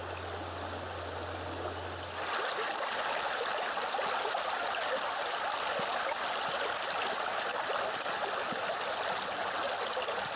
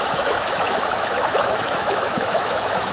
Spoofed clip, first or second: second